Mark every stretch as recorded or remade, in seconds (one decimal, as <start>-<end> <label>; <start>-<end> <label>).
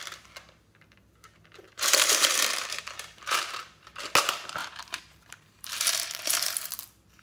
0.0-1.7 recorded; 1.7-3.9 remade; 3.9-4.6 recorded; 4.6-6.7 remade; 6.7-7.2 recorded